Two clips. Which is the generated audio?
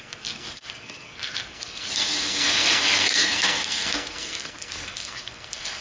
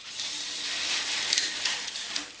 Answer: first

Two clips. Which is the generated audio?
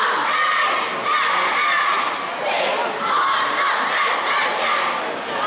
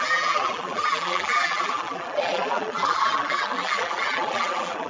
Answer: second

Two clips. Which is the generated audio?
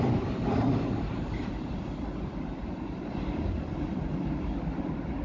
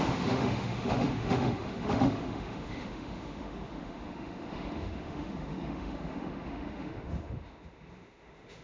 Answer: second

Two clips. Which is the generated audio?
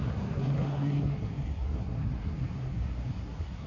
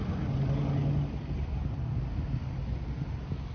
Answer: first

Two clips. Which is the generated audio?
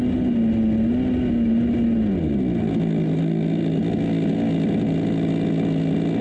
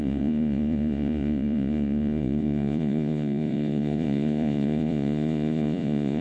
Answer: second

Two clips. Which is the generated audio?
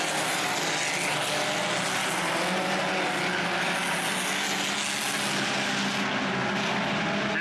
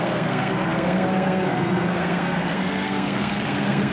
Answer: second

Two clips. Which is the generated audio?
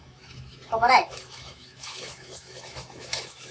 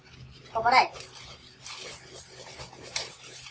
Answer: first